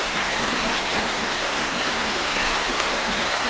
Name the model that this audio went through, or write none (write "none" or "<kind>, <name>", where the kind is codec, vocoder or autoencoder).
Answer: codec, SNAC